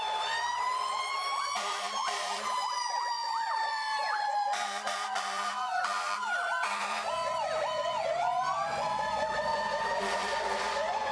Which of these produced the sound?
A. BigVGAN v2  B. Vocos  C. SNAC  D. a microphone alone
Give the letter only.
B